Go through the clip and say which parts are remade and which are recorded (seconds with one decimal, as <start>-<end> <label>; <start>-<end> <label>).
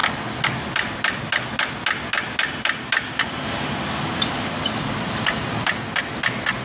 0.0-6.6 recorded